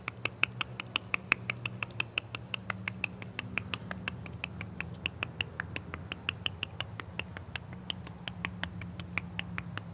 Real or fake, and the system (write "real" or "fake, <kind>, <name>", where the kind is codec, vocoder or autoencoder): real